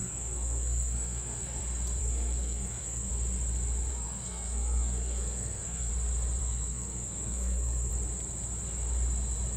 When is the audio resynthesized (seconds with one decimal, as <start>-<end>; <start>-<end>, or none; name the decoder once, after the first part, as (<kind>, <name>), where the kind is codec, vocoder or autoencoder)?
0.0-1.6 (codec, SNAC); 2.0-3.1; 3.9-5.9; 6.4-7.9

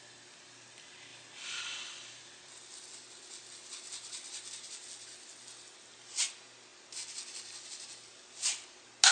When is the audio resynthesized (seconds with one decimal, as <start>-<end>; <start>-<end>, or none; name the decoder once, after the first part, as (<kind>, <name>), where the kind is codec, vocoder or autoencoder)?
none

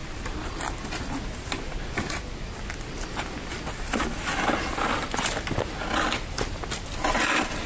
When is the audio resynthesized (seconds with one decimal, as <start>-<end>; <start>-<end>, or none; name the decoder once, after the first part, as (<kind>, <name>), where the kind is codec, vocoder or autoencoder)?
none

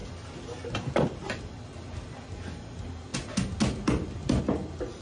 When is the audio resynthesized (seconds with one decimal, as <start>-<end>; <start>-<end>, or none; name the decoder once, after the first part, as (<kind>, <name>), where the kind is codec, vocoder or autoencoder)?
none

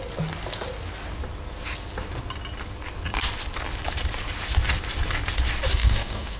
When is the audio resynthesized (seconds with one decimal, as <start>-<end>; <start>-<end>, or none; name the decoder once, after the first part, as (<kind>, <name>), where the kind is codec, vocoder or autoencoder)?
5.7-6.4 (codec, DAC)